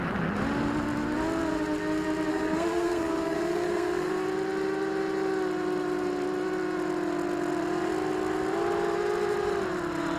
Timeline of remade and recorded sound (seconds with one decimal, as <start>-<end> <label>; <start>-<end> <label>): 0.0-2.3 recorded; 2.3-4.1 remade; 4.1-10.2 recorded

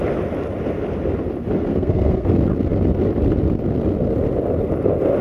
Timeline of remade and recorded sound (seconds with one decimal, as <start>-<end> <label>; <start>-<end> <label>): 0.0-1.7 recorded; 1.7-2.3 remade; 2.3-5.2 recorded

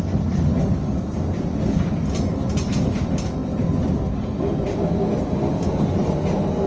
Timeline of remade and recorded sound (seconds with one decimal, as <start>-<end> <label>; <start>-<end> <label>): 0.0-6.7 recorded

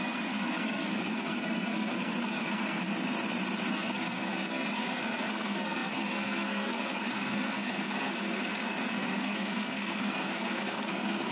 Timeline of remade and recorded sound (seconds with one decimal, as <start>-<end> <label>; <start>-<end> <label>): 0.0-2.9 remade; 2.9-3.7 recorded; 3.7-11.3 remade

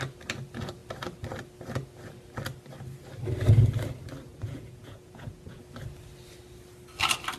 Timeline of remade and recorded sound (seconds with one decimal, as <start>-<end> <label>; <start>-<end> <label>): 0.0-4.3 recorded; 4.3-5.6 remade; 5.6-7.4 recorded